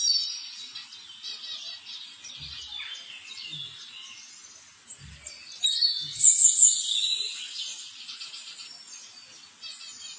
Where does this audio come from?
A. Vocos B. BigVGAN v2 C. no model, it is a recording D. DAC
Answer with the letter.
C